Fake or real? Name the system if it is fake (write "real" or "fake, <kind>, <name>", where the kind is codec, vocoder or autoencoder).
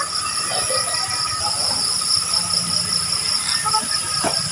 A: real